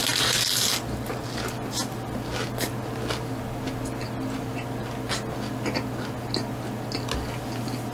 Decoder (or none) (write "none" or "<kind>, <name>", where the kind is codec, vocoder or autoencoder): none